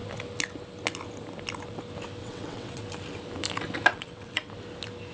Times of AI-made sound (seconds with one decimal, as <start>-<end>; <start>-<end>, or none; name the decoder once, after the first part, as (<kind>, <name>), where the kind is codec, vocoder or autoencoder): 2.2-2.8 (vocoder, WaveNeXt); 3.9-4.5